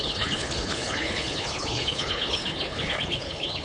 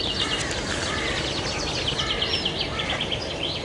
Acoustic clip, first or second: second